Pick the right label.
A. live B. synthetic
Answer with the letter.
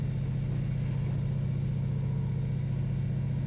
A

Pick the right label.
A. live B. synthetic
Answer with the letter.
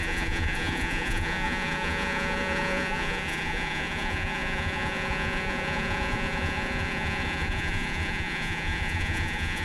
B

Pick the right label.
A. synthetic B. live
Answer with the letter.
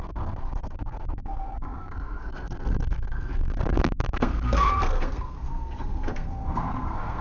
A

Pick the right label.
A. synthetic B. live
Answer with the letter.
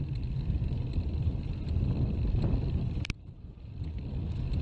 B